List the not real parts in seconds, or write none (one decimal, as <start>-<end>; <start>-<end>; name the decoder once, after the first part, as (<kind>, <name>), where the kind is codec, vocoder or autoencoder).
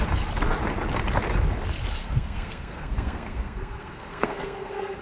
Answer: 2.0-5.0 (codec, SNAC)